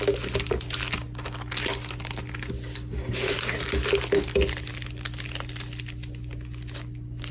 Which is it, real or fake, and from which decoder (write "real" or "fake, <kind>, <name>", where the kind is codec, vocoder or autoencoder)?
real